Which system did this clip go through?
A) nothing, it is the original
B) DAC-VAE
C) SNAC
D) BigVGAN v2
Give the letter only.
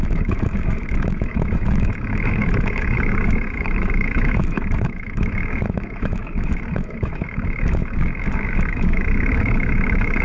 B